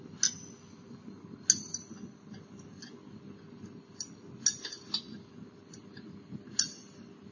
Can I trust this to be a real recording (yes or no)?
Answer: yes